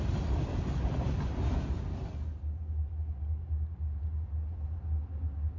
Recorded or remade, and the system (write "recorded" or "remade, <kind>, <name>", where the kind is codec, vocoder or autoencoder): recorded